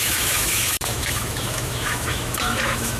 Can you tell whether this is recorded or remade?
remade